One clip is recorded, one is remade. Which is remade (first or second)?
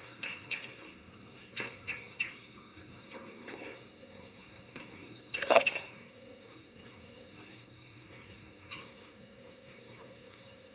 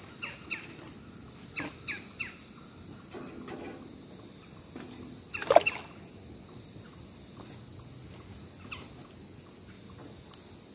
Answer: first